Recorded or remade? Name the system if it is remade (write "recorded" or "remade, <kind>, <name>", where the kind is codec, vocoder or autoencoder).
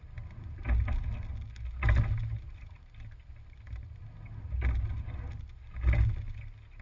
recorded